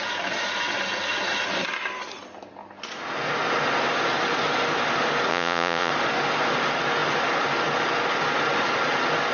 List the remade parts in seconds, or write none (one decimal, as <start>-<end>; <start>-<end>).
5.3-5.9

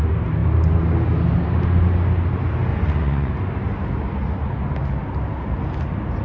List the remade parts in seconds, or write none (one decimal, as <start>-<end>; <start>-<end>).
2.7-3.3